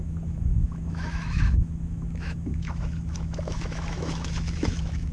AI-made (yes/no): yes